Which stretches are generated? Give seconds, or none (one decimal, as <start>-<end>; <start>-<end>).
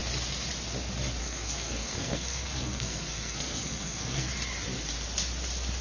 1.2-4.3